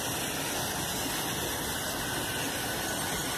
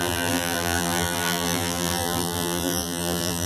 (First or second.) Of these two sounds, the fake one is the second